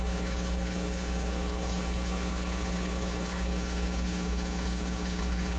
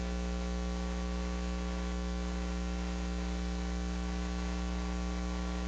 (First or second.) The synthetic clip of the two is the first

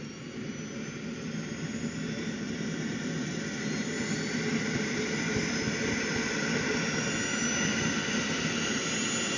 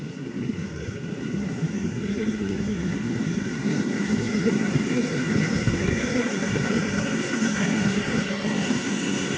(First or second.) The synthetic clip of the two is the second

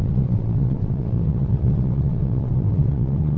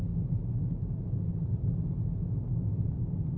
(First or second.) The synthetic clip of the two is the first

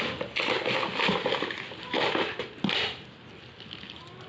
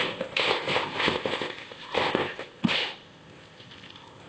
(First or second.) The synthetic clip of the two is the second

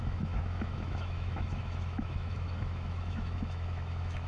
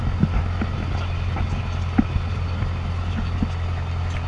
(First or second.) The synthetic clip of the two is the first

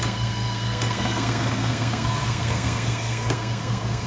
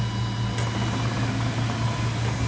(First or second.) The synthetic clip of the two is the first